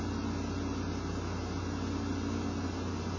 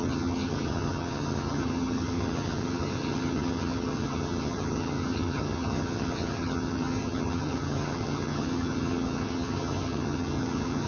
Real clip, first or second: first